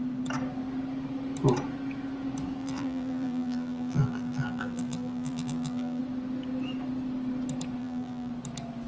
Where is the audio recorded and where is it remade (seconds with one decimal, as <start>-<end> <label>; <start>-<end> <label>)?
0.0-2.6 recorded; 2.6-6.0 remade; 6.0-7.8 recorded; 7.8-8.3 remade; 8.3-8.9 recorded